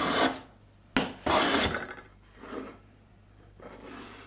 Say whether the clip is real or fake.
real